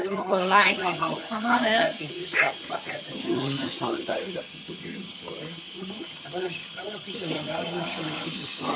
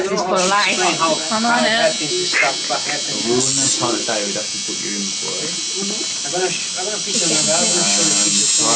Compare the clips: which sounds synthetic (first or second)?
first